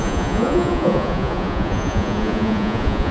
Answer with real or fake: fake